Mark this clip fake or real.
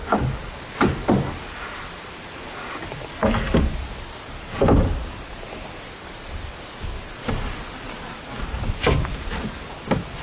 real